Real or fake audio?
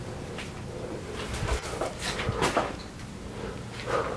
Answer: real